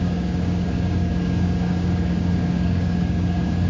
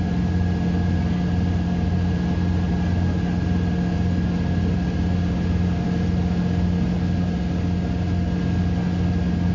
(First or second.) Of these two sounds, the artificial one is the first